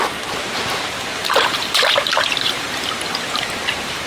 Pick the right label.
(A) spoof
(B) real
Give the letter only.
A